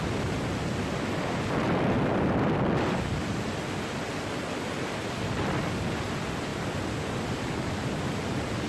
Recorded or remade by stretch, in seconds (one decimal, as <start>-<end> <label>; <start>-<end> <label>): 0.0-8.7 recorded